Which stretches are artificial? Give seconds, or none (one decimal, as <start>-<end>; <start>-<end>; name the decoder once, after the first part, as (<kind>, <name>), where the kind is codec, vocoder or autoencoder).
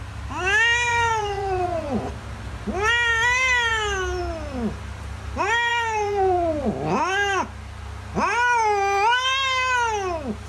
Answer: 0.9-2.1 (vocoder, Vocos); 5.7-6.7